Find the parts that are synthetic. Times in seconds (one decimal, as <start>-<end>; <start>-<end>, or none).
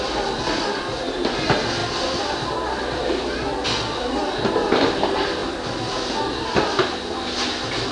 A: none